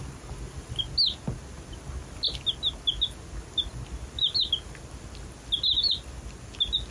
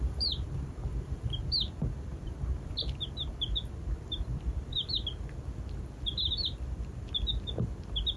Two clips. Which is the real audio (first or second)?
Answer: first